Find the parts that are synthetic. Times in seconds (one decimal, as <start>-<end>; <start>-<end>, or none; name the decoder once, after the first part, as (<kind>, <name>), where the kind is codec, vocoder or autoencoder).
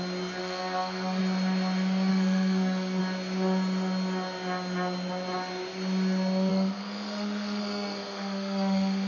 0.4-1.2 (codec, SNAC); 2.1-3.0; 6.5-9.1